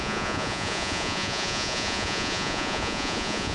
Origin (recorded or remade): remade